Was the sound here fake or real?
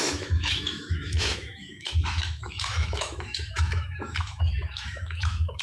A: fake